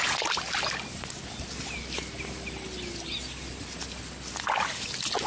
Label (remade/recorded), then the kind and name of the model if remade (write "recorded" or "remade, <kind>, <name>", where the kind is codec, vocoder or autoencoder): recorded